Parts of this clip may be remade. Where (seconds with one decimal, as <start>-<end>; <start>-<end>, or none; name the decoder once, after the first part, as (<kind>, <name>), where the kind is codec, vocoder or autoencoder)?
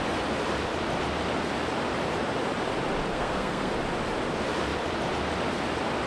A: 3.1-3.7 (codec, SNAC)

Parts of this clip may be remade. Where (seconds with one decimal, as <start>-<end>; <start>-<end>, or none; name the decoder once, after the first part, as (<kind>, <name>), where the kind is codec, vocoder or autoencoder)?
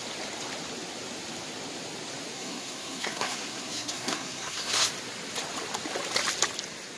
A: 2.3-4.9 (codec, SNAC)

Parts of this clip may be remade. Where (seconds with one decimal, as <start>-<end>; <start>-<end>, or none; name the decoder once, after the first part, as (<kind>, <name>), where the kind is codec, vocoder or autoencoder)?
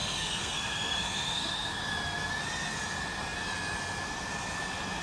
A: 0.0-1.8 (codec, SNAC)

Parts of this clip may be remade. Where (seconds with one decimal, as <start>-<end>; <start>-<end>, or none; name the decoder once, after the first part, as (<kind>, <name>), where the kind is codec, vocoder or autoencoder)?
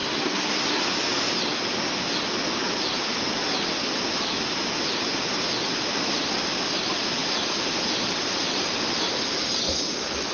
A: 0.0-0.8 (codec, SNAC)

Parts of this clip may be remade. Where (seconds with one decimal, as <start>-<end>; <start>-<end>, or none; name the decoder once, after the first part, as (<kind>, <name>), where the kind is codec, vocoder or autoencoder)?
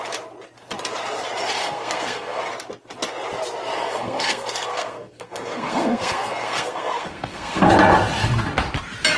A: 1.6-2.4 (codec, SNAC); 3.8-7.7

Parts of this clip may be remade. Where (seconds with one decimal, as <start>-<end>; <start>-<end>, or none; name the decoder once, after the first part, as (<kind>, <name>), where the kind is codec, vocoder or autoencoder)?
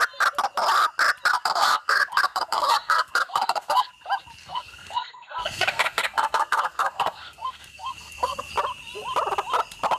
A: 1.3-3.9 (codec, SNAC); 4.4-8.5